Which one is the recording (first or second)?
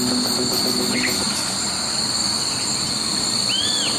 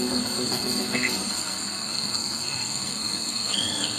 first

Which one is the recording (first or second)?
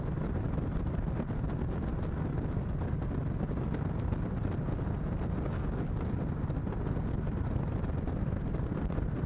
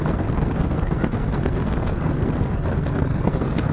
first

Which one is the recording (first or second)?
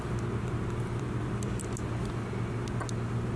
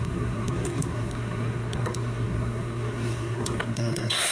first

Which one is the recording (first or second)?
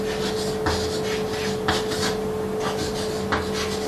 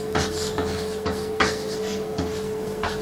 first